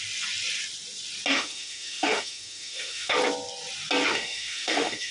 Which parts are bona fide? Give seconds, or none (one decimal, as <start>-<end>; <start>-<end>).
0.0-1.3; 3.2-4.1